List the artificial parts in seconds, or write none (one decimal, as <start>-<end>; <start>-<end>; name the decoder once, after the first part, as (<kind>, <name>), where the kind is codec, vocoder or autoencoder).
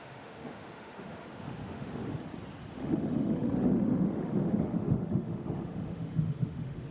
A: 0.0-2.0 (autoencoder, DAC-VAE); 2.7-6.9